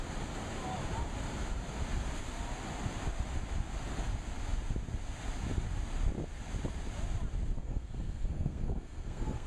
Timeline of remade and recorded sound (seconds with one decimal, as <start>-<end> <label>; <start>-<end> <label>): 0.0-7.6 recorded; 7.6-9.5 remade